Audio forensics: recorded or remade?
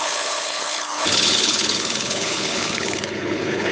remade